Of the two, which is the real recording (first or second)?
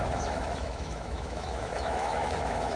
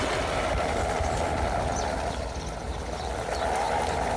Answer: second